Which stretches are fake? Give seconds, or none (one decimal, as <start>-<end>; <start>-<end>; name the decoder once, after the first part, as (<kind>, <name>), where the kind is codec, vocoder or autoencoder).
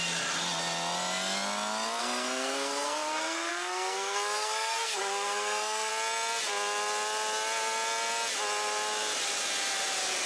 2.0-5.9 (codec, SNAC)